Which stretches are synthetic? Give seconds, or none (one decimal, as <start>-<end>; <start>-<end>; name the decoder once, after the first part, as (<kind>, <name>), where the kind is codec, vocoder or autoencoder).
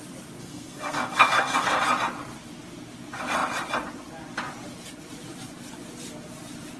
0.4-1.8 (codec, SNAC)